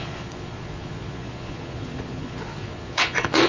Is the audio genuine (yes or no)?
no